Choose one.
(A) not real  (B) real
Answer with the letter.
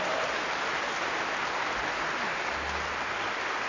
B